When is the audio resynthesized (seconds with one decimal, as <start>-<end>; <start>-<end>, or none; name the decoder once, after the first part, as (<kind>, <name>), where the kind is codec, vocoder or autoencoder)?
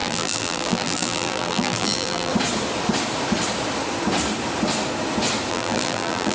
0.0-2.3 (vocoder, BigVGAN v2); 5.5-6.3